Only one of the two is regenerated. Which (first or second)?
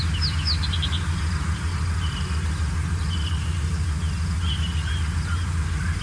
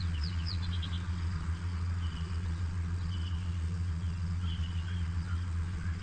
second